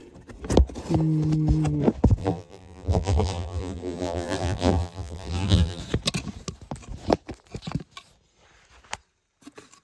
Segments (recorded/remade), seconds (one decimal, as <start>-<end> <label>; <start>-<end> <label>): 0.0-2.2 recorded; 2.2-5.8 remade; 5.8-9.8 recorded